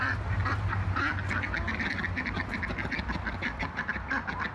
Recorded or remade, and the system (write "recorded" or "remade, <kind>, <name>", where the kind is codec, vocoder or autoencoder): recorded